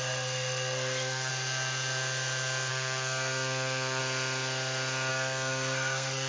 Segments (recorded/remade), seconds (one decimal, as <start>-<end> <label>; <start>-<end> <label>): 0.0-1.3 remade; 1.3-2.7 recorded; 2.7-4.0 remade; 4.0-5.1 recorded; 5.1-6.3 remade